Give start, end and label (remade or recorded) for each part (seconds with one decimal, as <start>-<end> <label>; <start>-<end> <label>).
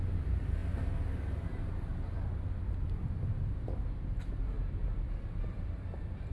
0.0-0.6 remade; 0.6-2.1 recorded; 2.1-6.3 remade